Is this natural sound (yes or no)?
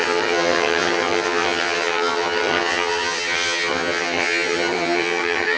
no